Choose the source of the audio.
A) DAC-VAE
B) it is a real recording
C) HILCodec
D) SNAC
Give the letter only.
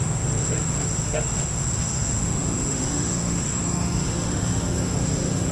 A